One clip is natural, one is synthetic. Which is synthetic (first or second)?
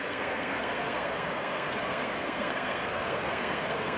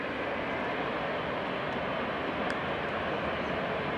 first